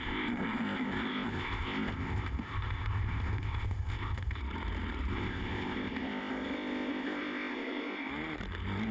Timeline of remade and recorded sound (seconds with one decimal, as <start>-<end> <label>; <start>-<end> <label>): 0.0-4.4 remade; 4.4-5.1 recorded; 5.1-8.1 remade; 8.1-8.9 recorded